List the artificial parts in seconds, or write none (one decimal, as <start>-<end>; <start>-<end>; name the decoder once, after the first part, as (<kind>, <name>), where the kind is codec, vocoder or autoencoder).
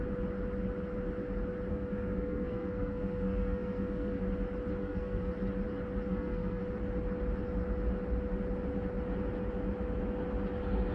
1.7-4.2 (codec, SNAC); 4.8-5.3; 6.1-6.6